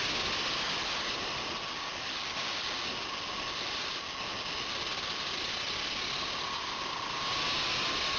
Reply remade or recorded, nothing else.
recorded